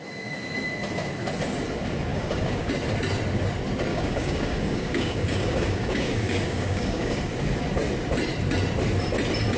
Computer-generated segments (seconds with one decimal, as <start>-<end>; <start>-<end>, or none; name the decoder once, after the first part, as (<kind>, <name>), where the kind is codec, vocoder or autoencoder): 2.1-2.7 (codec, DAC); 3.9-7.2